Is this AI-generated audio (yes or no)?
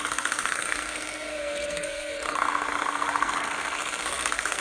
yes